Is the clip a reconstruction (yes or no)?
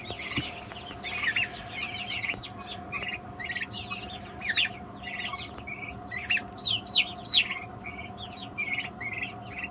no